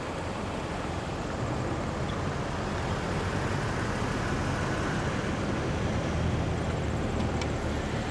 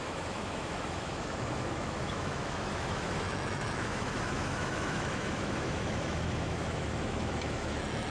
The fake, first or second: second